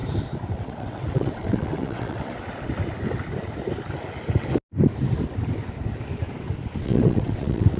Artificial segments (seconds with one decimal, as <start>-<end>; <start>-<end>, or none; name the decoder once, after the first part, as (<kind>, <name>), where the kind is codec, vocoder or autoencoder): 0.5-2.3 (vocoder, WaveNeXt); 6.8-7.8